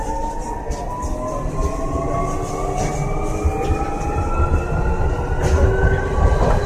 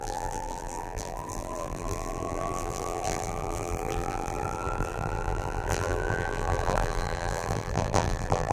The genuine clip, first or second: first